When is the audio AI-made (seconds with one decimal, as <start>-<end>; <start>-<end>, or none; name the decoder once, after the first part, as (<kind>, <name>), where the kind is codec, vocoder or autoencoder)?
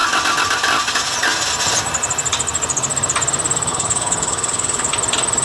3.7-4.9 (codec, HILCodec)